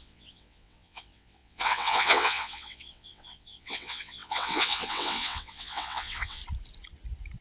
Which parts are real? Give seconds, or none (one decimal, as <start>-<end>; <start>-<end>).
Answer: 6.4-7.4